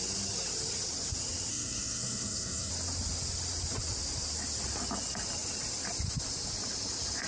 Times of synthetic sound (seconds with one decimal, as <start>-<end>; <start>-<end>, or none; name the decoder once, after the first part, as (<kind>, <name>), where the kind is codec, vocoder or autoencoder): 1.5-2.7 (codec, SNAC)